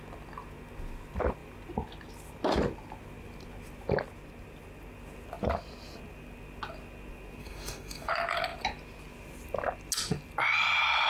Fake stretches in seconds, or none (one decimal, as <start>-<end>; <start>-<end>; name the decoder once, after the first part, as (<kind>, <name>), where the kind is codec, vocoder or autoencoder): 7.4-8.1 (codec, DAC)